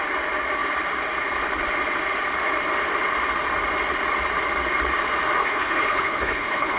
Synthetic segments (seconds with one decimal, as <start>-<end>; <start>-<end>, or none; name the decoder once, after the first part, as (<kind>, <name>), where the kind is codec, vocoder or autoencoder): 5.4-6.8 (codec, HILCodec)